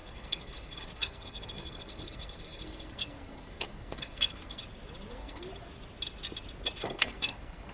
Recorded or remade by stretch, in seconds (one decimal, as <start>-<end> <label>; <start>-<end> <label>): 0.0-4.6 remade; 4.6-5.1 recorded; 5.1-5.5 remade; 5.5-6.8 recorded; 6.8-7.7 remade